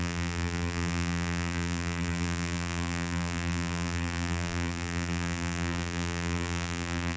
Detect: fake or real fake